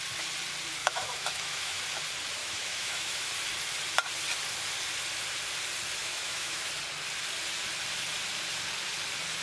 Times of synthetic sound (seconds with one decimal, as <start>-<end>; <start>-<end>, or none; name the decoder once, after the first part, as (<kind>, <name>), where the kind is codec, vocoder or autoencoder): 0.8-1.8 (autoencoder, DAC-VAE); 2.4-3.3; 6.0-6.7